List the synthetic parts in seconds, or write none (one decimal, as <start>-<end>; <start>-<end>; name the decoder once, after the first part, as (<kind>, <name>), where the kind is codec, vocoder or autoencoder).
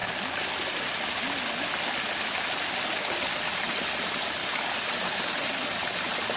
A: none